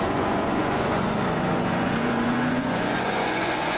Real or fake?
fake